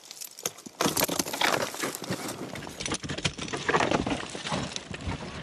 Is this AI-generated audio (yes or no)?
no